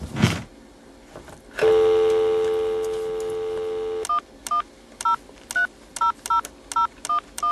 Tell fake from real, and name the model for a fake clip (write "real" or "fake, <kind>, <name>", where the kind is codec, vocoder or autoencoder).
real